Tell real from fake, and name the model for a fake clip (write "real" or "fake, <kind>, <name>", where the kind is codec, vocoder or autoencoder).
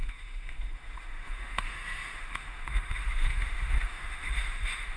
fake, autoencoder, DAC-VAE